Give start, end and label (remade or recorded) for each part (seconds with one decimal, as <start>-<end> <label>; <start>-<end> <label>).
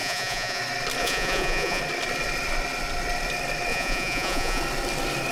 0.0-0.6 remade; 0.6-1.0 recorded; 1.0-1.8 remade; 1.8-3.7 recorded; 3.7-4.6 remade; 4.6-5.3 recorded